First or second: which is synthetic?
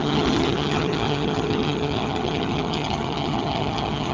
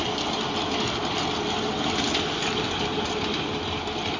first